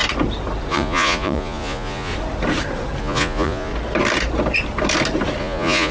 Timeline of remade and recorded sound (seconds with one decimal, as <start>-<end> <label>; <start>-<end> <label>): 0.0-0.7 recorded; 0.7-2.1 remade; 2.1-3.0 recorded; 3.0-3.7 remade; 3.7-5.4 recorded; 5.4-5.9 remade